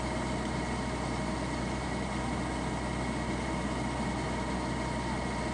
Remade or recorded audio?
recorded